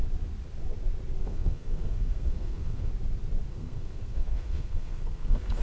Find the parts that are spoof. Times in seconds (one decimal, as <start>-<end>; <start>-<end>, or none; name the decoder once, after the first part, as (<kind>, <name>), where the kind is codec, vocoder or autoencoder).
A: 1.2-2.9 (codec, SNAC); 3.5-5.6